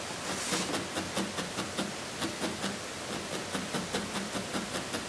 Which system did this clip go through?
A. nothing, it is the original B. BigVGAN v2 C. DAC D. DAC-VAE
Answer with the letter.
A